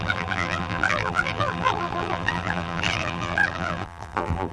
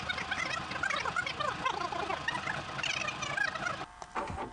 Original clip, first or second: second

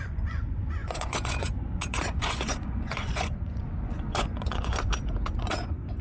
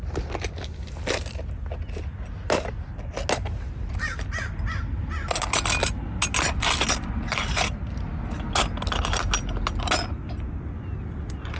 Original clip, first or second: second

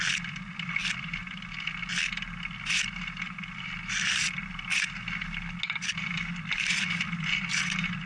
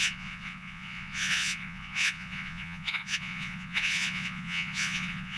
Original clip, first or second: first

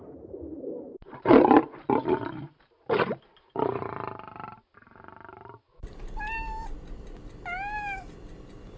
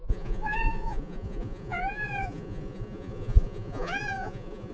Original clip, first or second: first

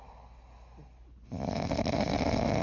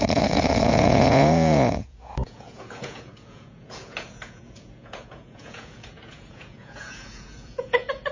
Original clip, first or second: first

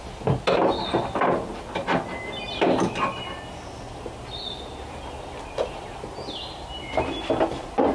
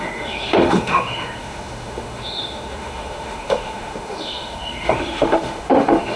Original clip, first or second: first